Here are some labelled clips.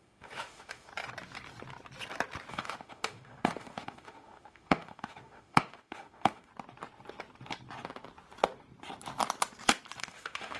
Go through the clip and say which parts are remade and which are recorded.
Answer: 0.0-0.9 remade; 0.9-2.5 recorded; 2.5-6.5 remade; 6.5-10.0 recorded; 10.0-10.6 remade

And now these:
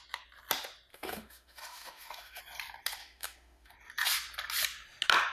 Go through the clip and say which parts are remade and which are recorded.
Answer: 0.0-0.9 recorded; 0.9-2.4 remade; 2.4-3.0 recorded; 3.0-3.7 remade; 3.7-5.3 recorded

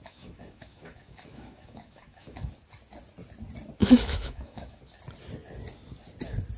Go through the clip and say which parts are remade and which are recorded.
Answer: 0.0-2.5 remade; 2.5-3.8 recorded; 3.8-4.8 remade; 4.8-6.6 recorded

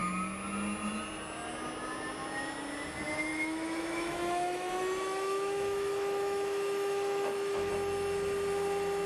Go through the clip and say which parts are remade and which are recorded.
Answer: 0.0-3.3 recorded; 3.3-7.7 remade; 7.7-9.1 recorded

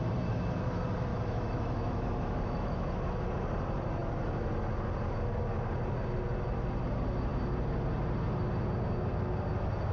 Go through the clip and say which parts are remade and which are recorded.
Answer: 0.0-1.1 recorded; 1.1-3.3 remade; 3.3-9.9 recorded

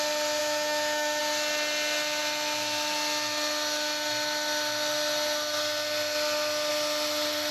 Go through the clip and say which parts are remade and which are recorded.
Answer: 0.0-0.4 recorded; 0.4-1.2 remade; 1.2-7.5 recorded

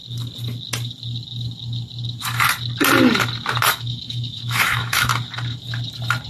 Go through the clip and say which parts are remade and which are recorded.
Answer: 0.0-3.7 recorded; 3.7-5.1 remade; 5.1-6.3 recorded